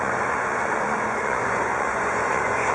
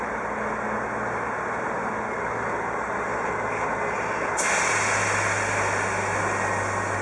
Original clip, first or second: second